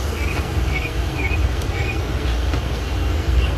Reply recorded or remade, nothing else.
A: remade